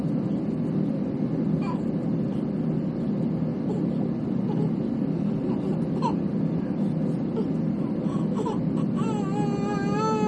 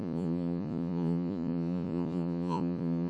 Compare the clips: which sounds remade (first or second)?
second